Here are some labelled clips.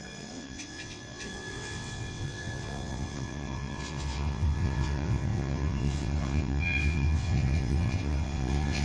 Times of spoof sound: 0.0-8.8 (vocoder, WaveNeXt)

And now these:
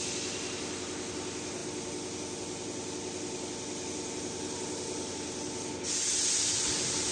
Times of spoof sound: none

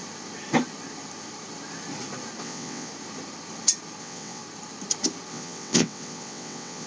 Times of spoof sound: 2.4-2.9 (vocoder, WaveNeXt); 4.0-4.4; 5.3-6.9

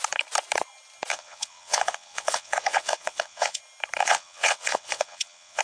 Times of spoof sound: 1.1-3.6 (vocoder, WaveNeXt); 4.0-5.6

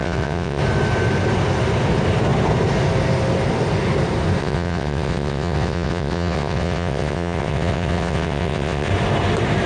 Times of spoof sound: 0.0-0.6 (vocoder, WaveNeXt); 4.4-8.9